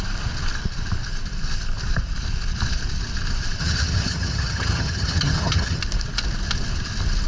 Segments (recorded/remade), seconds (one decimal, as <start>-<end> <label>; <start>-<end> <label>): 0.0-3.6 recorded; 3.6-5.8 remade; 5.8-7.3 recorded